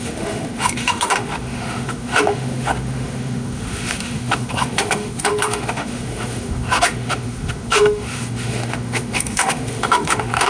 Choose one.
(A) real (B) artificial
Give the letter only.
B